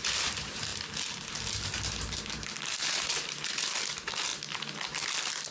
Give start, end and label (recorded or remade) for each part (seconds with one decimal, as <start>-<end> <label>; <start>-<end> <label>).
0.0-0.7 remade; 0.7-2.8 recorded; 2.8-4.3 remade; 4.3-5.5 recorded